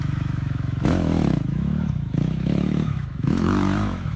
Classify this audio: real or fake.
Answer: fake